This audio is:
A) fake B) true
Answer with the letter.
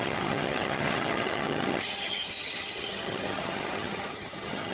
A